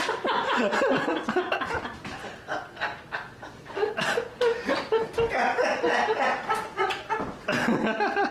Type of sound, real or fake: real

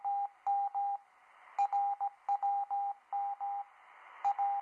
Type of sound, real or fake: real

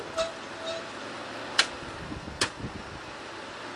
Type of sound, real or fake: real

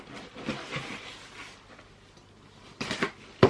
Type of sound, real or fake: real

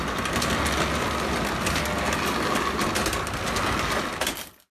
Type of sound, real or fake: real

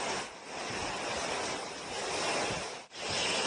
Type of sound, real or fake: real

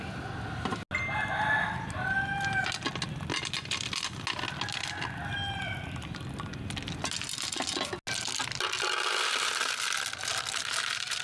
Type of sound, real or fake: real